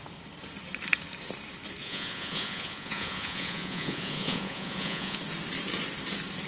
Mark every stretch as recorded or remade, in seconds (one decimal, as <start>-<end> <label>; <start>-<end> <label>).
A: 0.0-1.8 recorded; 1.8-5.2 remade; 5.2-6.5 recorded